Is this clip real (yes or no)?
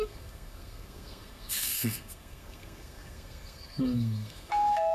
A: no